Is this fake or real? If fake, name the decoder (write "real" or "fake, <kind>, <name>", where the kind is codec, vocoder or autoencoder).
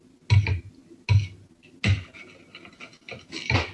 real